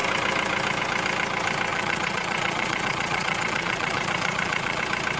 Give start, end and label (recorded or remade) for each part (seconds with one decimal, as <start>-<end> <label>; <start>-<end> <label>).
0.0-1.7 recorded; 1.7-4.8 remade; 4.8-5.2 recorded